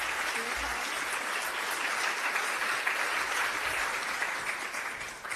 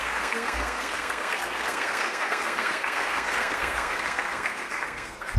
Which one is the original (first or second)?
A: first